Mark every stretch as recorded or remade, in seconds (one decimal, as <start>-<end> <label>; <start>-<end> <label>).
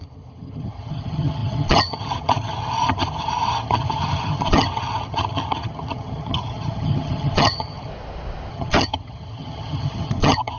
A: 0.0-7.9 remade; 7.9-8.5 recorded; 8.5-10.6 remade